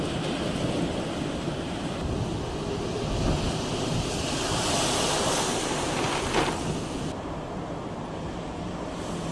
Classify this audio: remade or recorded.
recorded